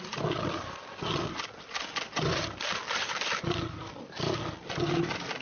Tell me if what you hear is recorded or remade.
recorded